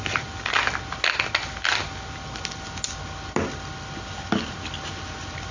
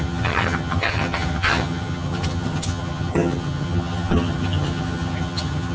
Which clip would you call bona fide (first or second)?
first